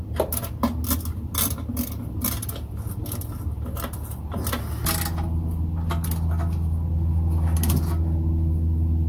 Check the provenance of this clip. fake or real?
real